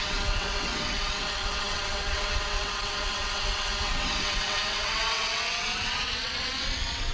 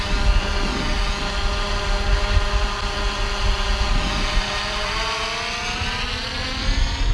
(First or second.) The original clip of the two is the second